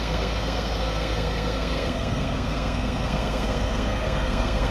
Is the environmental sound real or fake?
fake